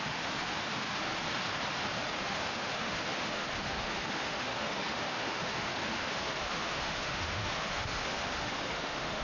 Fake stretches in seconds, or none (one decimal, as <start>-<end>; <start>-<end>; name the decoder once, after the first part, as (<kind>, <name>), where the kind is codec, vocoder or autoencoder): 0.0-1.1 (autoencoder, DAC-VAE); 2.2-9.2